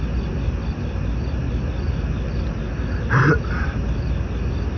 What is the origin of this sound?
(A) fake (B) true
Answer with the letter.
B